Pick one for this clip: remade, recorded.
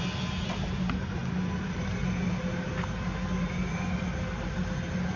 recorded